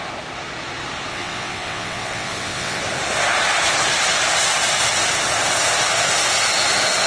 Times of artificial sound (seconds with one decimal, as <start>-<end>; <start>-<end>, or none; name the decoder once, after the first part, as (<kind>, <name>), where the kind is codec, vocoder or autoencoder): 1.1-2.8 (vocoder, WaveNeXt)